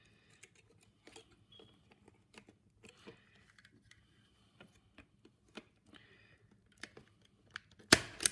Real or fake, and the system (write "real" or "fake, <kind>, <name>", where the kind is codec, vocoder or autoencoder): real